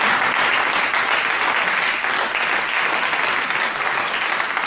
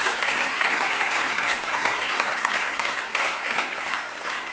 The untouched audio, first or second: first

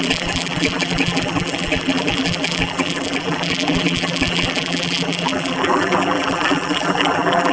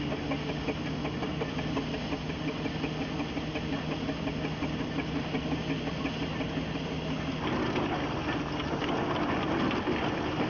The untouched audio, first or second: second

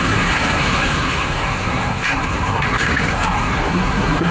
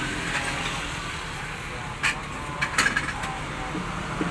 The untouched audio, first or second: second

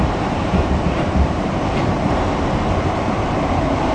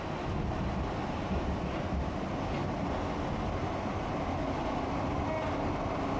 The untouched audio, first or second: second